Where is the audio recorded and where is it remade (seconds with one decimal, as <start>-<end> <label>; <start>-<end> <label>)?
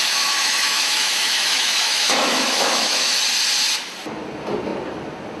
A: 0.0-3.2 remade; 3.2-5.4 recorded